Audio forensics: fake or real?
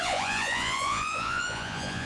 fake